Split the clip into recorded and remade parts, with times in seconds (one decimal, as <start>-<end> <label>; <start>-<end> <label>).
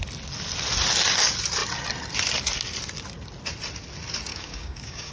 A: 0.0-4.3 recorded; 4.3-5.1 remade